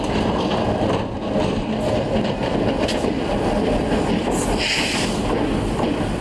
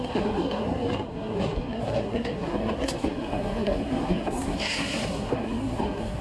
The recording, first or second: first